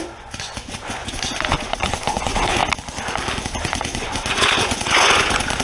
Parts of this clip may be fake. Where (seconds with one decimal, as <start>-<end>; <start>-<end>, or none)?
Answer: 0.0-2.6; 3.4-5.6